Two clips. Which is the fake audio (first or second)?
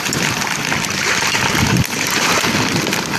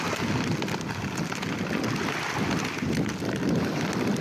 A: first